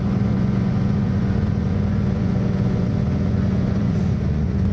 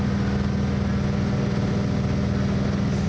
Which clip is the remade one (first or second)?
first